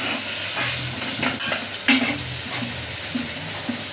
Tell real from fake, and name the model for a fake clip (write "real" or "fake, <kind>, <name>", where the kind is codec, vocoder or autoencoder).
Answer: real